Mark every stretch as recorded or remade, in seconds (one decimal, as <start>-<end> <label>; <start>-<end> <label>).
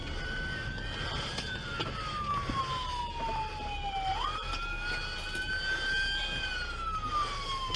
0.0-7.8 recorded